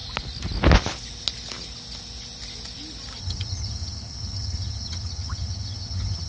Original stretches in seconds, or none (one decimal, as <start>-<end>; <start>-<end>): 0.0-3.2